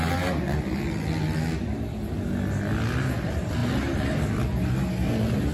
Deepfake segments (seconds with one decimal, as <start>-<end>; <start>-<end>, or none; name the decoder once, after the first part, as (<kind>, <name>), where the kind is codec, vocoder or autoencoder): none